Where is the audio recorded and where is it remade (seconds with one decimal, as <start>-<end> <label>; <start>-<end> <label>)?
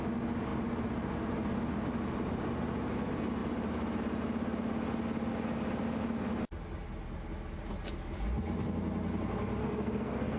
0.0-9.6 recorded; 9.6-10.4 remade